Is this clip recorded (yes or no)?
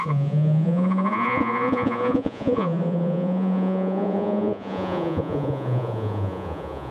no